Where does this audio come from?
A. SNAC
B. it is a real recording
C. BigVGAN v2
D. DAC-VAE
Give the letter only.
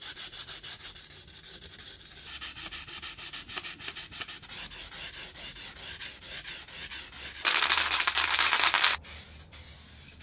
B